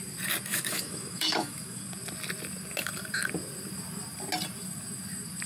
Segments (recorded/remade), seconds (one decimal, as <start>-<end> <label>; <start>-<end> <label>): 0.0-0.5 recorded; 0.5-1.8 remade; 1.8-5.5 recorded